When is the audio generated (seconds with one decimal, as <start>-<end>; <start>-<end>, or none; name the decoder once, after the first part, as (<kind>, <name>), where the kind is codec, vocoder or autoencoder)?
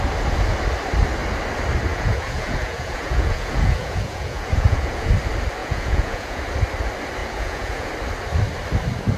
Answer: 1.9-5.1 (vocoder, Vocos); 5.6-6.4; 7.2-7.9